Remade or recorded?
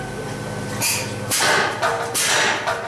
recorded